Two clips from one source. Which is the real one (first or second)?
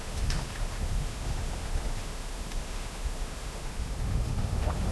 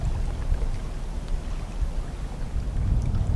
second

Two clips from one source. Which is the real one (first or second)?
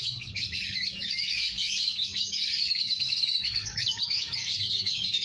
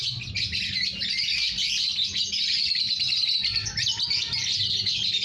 second